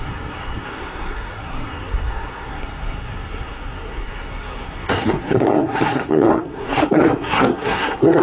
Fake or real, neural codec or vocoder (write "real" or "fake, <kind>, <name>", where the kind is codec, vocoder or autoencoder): fake, codec, SNAC